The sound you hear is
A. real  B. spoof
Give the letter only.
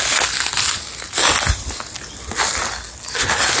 A